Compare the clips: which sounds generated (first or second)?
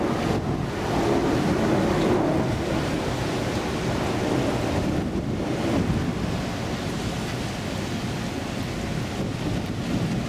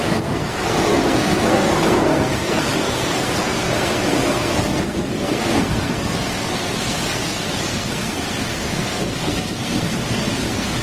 second